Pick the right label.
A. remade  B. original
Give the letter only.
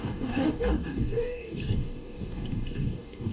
A